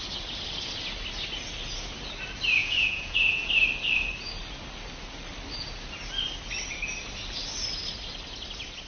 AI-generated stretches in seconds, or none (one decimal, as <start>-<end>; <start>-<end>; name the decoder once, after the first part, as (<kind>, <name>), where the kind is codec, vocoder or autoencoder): 2.6-3.4 (vocoder, Vocos)